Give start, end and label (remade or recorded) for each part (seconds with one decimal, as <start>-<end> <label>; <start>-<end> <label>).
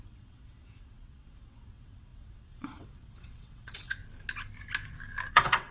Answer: 0.0-4.0 remade; 4.0-5.3 recorded; 5.3-5.7 remade